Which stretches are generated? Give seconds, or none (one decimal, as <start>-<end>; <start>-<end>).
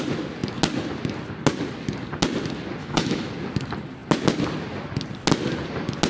2.8-3.3